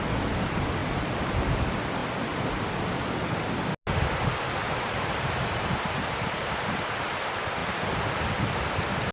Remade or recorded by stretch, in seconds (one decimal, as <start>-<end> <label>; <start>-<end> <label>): 0.0-0.8 recorded; 0.8-1.6 remade; 1.6-4.6 recorded; 4.6-6.8 remade; 6.8-9.1 recorded